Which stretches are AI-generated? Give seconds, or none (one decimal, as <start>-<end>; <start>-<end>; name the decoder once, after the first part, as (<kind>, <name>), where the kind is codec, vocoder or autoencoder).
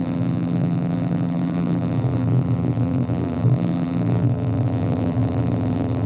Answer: 0.0-6.1 (vocoder, BigVGAN v2)